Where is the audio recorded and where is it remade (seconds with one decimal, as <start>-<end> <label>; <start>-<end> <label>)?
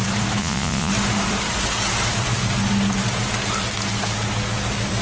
0.0-0.4 recorded; 0.4-0.9 remade; 0.9-5.0 recorded